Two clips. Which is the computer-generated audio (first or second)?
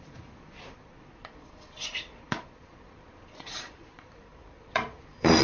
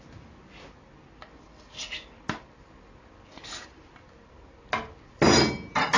first